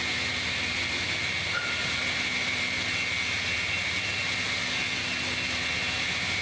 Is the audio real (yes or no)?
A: yes